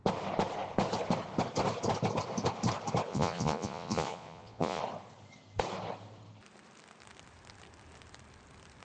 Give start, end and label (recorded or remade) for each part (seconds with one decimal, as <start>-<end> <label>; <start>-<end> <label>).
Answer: 0.0-3.1 recorded; 3.1-4.8 remade; 4.8-8.8 recorded